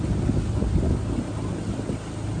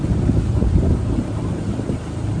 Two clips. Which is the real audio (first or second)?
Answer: first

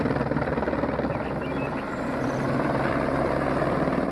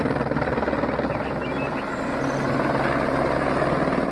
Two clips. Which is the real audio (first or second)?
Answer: second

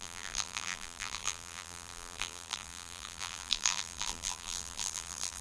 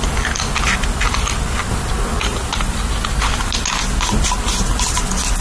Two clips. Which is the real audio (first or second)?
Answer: second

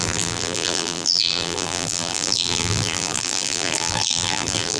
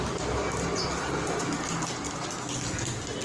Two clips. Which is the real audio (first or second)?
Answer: second